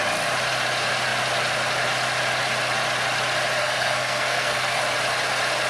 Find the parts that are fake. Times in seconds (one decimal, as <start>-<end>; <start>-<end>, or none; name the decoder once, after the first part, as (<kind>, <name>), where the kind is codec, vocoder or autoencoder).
3.6-4.8 (codec, SNAC)